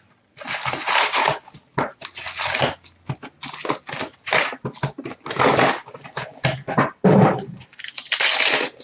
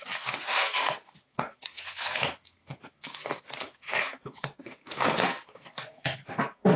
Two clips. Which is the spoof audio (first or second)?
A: second